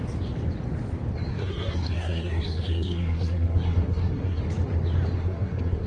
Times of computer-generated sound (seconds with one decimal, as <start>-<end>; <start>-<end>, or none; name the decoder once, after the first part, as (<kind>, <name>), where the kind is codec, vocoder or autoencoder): 1.3-4.4 (codec, SNAC); 5.2-5.9

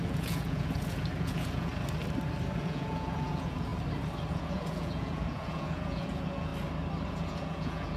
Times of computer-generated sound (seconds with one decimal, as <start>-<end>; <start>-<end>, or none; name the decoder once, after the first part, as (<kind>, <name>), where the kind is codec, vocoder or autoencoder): 0.0-1.7 (vocoder, Vocos); 2.5-3.7; 4.3-6.5; 7.1-8.0

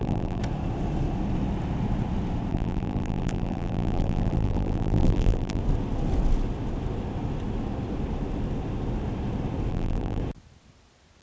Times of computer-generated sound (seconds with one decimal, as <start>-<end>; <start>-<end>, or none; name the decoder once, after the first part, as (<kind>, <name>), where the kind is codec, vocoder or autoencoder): 0.0-0.4 (vocoder, BigVGAN v2); 2.5-5.6; 9.7-10.2

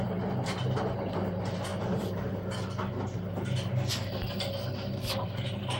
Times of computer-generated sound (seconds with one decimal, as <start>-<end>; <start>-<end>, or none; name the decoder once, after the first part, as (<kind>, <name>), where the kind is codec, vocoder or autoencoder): 1.7-2.3 (vocoder, BigVGAN v2)

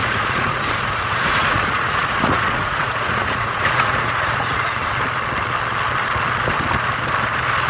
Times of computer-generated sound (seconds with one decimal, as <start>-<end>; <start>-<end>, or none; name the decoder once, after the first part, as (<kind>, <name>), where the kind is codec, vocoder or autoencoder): 0.0-4.8 (vocoder, Vocos)